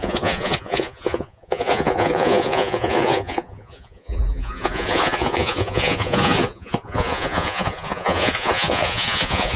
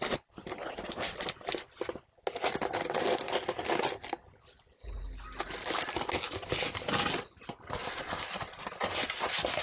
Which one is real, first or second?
second